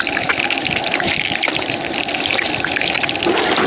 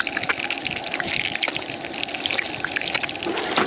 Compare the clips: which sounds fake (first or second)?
first